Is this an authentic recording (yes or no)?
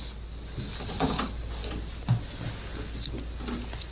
yes